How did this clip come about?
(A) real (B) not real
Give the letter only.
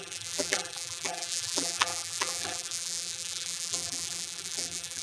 B